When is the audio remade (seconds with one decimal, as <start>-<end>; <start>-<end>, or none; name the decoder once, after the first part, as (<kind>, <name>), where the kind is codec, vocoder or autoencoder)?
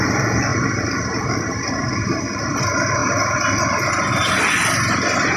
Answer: 0.5-2.6 (vocoder, BigVGAN v2)